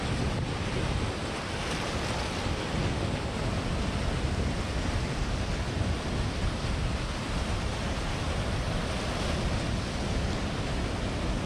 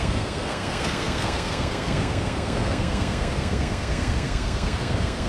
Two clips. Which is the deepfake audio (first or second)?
second